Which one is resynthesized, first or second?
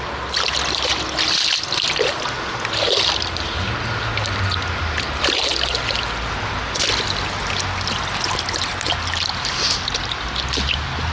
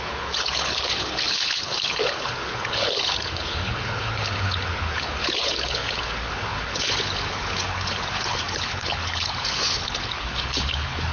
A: second